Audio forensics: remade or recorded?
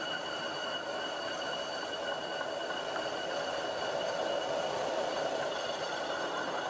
recorded